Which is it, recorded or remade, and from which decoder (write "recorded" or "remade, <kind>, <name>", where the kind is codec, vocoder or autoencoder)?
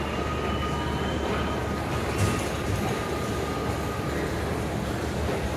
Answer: recorded